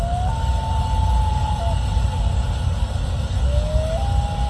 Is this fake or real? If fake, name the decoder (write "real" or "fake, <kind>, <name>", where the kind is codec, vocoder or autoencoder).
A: real